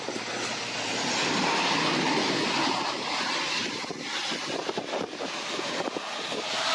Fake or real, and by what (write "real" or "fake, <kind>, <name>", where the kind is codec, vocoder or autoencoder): real